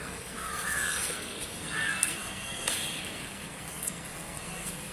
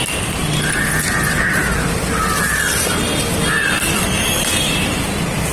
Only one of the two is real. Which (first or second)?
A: second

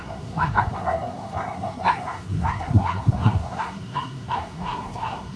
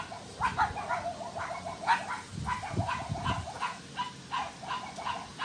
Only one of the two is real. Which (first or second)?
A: second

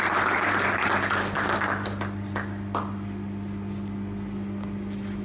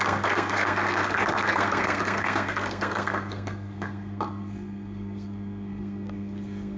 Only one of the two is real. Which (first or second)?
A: first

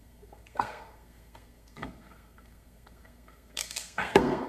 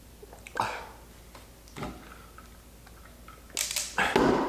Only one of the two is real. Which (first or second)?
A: second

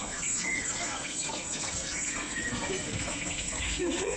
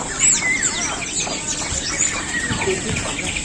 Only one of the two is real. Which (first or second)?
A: second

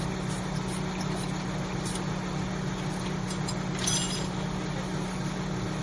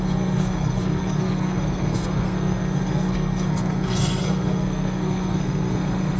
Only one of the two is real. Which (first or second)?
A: first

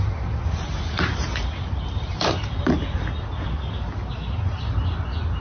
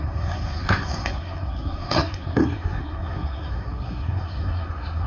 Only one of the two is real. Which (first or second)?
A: first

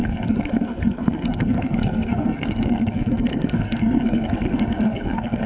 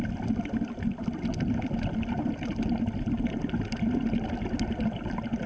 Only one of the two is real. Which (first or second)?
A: second